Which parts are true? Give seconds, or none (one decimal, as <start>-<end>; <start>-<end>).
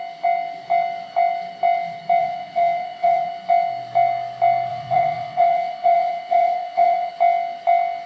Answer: 0.0-2.2; 3.3-4.7; 7.1-8.1